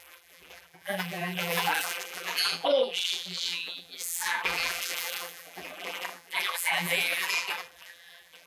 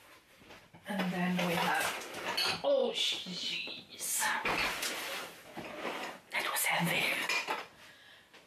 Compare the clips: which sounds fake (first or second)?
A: first